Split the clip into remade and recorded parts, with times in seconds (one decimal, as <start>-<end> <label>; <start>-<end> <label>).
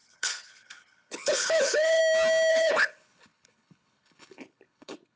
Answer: 0.0-2.0 remade; 2.0-2.5 recorded; 2.5-5.2 remade